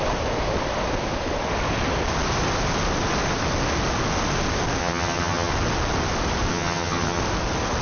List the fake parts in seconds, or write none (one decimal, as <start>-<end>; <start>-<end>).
4.8-5.5; 6.5-7.2